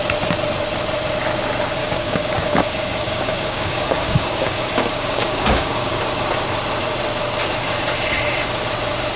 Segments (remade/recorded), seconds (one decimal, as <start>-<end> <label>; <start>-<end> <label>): 0.0-1.8 recorded; 1.8-6.0 remade; 6.0-9.2 recorded